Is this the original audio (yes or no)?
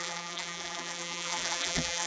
no